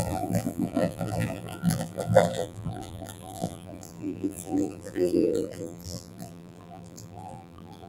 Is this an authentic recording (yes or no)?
no